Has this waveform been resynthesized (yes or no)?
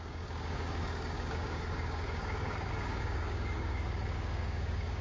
yes